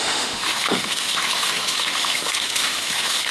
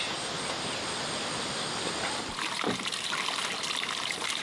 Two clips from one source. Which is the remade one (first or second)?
first